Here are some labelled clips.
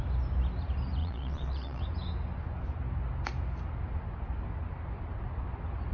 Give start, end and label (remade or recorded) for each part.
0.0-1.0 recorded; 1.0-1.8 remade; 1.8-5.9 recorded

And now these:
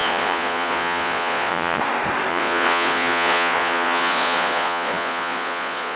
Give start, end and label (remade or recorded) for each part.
0.0-1.8 remade; 1.8-2.3 recorded; 2.3-6.0 remade

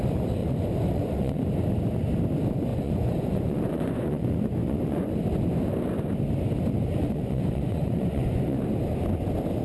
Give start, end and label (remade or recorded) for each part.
0.0-0.4 recorded; 0.4-1.4 remade; 1.4-2.7 recorded; 2.7-5.1 remade; 5.1-7.0 recorded; 7.0-8.6 remade; 8.6-9.6 recorded

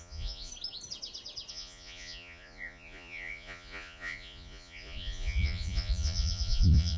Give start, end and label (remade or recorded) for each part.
0.0-0.5 remade; 0.5-1.5 recorded; 1.5-7.0 remade